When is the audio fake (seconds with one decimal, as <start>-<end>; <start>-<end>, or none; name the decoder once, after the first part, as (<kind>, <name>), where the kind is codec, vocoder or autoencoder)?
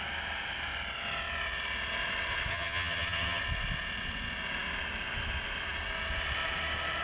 2.5-3.4 (vocoder, HiFi-GAN)